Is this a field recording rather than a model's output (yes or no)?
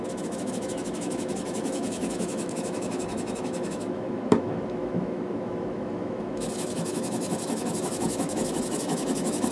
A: no